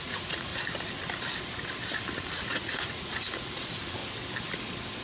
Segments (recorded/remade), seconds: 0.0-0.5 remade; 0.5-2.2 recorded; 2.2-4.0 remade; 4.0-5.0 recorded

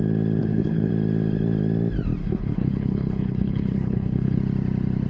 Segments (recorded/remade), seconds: 0.0-0.4 recorded; 0.4-0.9 remade; 0.9-2.2 recorded; 2.2-4.4 remade; 4.4-5.1 recorded